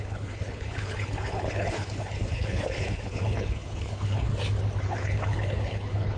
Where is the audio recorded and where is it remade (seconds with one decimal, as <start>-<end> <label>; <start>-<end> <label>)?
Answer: 0.0-4.3 remade; 4.3-4.8 recorded; 4.8-6.2 remade